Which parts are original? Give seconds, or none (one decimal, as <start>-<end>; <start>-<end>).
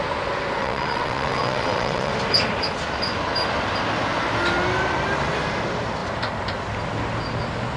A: 0.0-0.6; 2.1-7.8